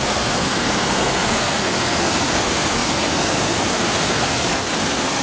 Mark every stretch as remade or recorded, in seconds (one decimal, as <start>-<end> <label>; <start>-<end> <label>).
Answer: 0.0-5.2 remade